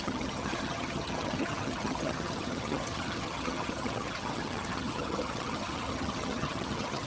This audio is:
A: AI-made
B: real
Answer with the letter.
A